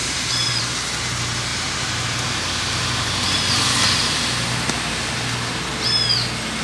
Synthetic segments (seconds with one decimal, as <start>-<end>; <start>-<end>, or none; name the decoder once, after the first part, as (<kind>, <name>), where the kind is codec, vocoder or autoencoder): 1.5-5.1 (vocoder, BigVGAN v2)